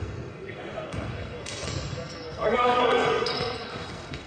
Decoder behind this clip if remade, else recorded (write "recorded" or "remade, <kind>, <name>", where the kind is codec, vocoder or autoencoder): remade, codec, SNAC